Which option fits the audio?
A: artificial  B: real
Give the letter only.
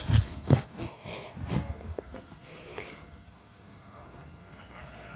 A